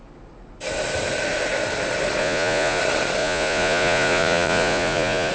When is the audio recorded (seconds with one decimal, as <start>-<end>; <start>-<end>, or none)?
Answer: 0.0-2.2; 2.8-3.2